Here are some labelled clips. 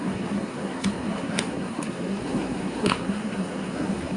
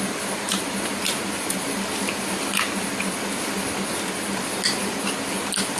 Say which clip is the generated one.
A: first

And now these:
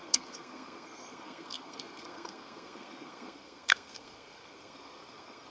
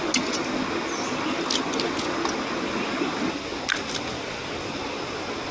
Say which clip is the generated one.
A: first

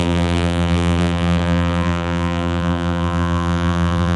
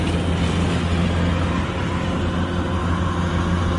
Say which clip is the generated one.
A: first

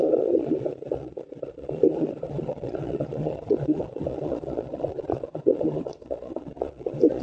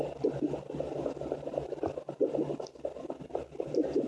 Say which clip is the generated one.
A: first